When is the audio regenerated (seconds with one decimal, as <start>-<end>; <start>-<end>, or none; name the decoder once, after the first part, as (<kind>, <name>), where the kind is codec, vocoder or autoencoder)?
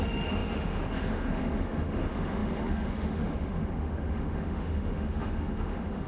0.0-6.1 (autoencoder, DAC-VAE)